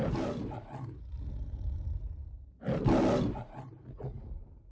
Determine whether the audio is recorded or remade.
recorded